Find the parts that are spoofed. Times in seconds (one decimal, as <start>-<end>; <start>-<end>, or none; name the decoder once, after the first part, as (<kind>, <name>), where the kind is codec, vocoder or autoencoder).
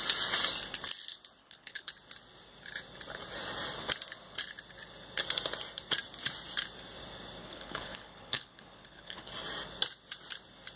1.4-1.9 (codec, HILCodec); 7.4-9.3